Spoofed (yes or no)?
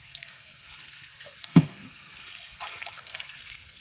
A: yes